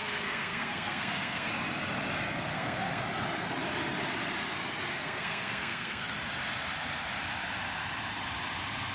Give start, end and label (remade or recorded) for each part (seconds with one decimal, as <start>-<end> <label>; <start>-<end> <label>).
0.0-1.5 remade; 1.5-2.5 recorded; 2.5-3.0 remade; 3.0-4.9 recorded; 4.9-6.1 remade; 6.1-8.9 recorded